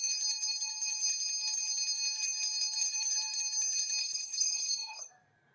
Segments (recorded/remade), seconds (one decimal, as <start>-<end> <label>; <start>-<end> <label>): 0.0-4.0 recorded; 4.0-5.1 remade; 5.1-5.5 recorded